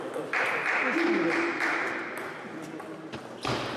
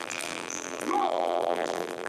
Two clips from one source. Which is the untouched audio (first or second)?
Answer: first